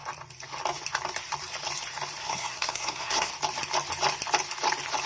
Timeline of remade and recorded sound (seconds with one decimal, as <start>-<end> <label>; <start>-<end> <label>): 0.0-2.2 recorded; 2.2-3.3 remade; 3.3-5.1 recorded